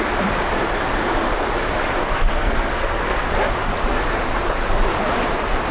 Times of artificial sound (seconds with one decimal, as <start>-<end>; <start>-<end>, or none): 2.0-3.3

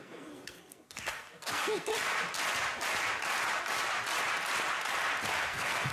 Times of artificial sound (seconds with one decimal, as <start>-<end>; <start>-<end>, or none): 0.0-1.9; 5.4-5.9

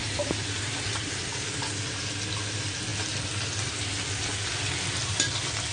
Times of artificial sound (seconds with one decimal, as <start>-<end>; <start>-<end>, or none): 0.0-1.1